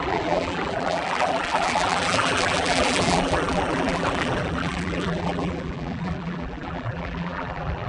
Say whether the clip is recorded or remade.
remade